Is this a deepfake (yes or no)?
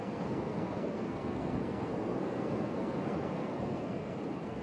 yes